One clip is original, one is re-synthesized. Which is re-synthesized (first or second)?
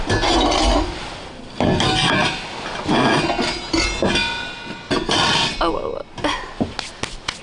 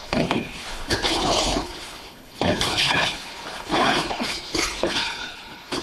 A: second